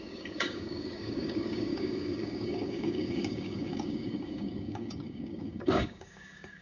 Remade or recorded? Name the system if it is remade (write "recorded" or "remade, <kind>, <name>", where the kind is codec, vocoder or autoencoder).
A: remade, codec, DAC